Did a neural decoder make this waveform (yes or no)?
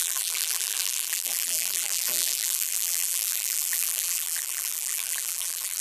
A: yes